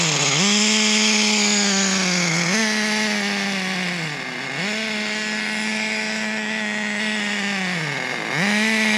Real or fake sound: real